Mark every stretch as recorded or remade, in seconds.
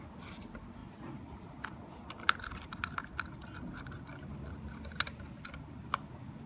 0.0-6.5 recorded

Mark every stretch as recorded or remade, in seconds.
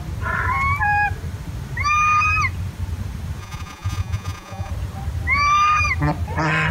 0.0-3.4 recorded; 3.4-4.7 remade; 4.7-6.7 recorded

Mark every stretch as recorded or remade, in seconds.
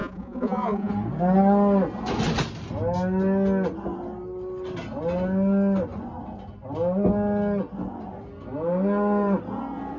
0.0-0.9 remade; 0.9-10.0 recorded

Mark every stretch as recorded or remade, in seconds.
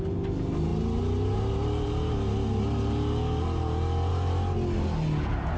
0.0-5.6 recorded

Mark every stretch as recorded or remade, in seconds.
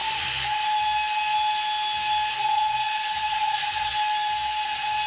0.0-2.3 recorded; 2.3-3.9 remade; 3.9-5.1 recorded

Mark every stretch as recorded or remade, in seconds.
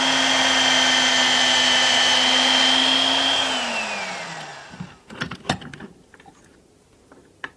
0.0-7.6 recorded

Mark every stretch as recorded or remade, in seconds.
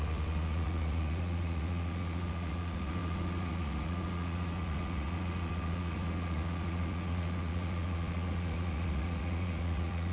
0.0-10.1 remade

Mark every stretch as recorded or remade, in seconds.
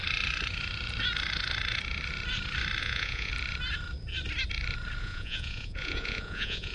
0.0-2.8 recorded; 2.8-3.3 remade; 3.3-5.0 recorded; 5.0-6.7 remade